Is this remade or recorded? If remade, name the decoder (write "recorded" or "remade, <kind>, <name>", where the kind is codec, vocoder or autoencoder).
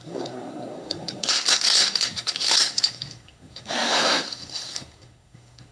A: remade, codec, SNAC